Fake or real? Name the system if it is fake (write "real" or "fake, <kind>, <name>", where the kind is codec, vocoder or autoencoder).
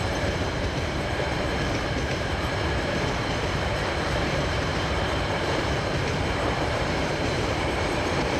fake, vocoder, BigVGAN v2